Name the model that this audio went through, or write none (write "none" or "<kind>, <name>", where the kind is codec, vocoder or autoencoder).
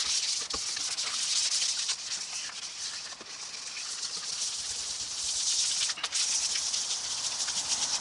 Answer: none